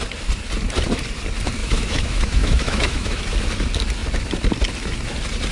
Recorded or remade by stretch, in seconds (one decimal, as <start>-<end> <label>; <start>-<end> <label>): 0.0-1.6 recorded; 1.6-3.2 remade; 3.2-5.5 recorded